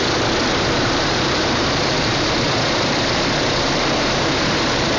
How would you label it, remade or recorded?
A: remade